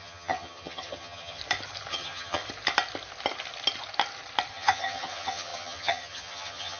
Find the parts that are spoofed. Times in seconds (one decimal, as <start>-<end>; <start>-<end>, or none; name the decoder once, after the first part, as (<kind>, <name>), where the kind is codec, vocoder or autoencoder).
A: 0.0-1.4 (vocoder, HiFi-GAN); 1.9-2.4; 4.5-6.8